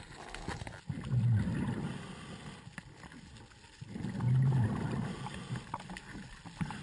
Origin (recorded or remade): recorded